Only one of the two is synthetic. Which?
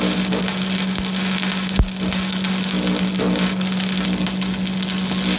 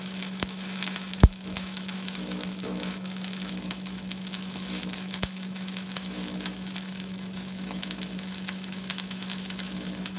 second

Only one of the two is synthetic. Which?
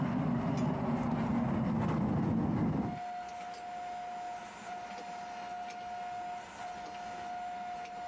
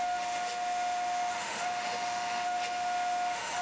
second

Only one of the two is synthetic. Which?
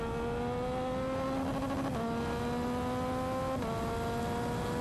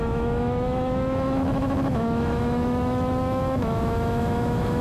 second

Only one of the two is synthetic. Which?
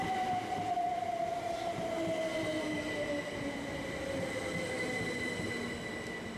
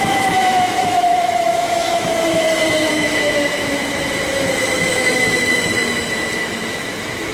second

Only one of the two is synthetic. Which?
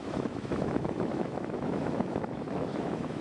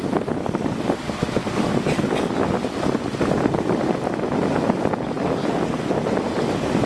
first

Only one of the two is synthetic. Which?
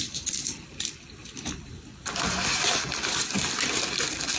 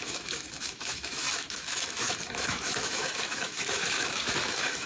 second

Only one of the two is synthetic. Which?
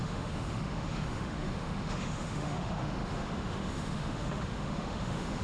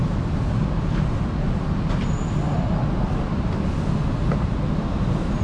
first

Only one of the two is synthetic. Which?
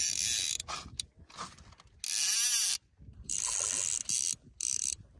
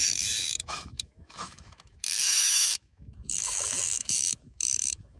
second